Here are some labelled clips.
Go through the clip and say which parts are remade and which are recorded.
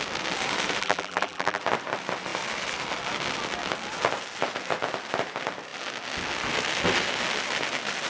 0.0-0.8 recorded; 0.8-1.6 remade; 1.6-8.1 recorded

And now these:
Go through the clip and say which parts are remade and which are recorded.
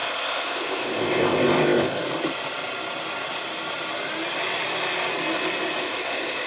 0.0-2.0 remade; 2.0-5.8 recorded; 5.8-6.5 remade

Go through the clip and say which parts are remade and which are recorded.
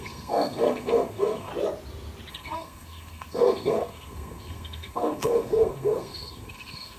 0.0-1.5 remade; 1.5-2.3 recorded; 2.3-7.0 remade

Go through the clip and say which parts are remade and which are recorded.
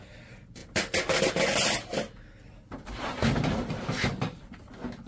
0.0-5.1 recorded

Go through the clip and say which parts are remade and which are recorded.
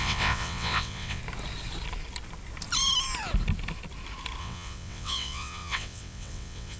0.0-1.2 remade; 1.2-4.4 recorded; 4.4-6.8 remade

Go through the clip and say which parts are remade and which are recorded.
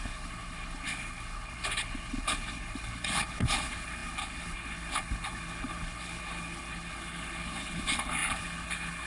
0.0-9.1 remade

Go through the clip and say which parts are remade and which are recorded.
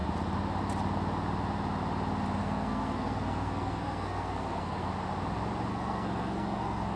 0.0-2.4 recorded; 2.4-4.9 remade; 4.9-5.7 recorded; 5.7-7.0 remade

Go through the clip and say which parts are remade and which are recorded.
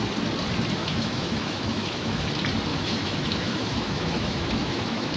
0.0-0.8 recorded; 0.8-2.2 remade; 2.2-2.7 recorded; 2.7-5.2 remade